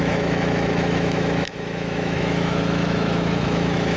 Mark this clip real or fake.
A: fake